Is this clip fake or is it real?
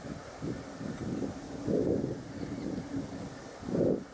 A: real